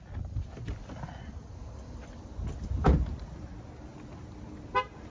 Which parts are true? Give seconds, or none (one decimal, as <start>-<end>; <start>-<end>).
0.0-1.6; 2.3-5.1